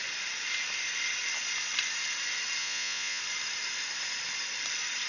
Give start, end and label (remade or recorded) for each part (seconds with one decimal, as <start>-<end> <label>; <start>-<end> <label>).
0.0-2.6 recorded; 2.6-3.2 remade; 3.2-5.1 recorded